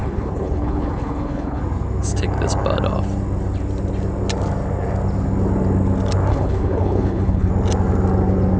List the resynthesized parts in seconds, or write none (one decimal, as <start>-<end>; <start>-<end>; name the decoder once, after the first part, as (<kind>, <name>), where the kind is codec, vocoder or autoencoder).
0.0-1.6 (codec, HILCodec); 6.3-7.5